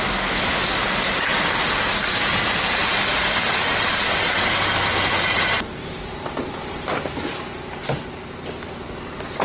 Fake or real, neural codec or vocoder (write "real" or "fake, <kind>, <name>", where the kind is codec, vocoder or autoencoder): real